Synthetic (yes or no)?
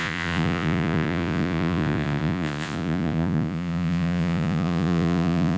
yes